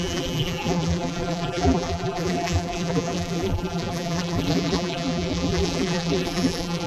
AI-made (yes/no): yes